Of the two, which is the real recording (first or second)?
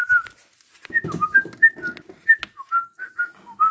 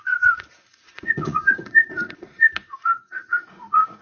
first